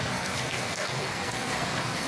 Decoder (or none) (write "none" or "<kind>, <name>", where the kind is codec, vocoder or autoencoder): codec, SNAC